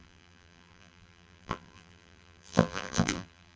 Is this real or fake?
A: fake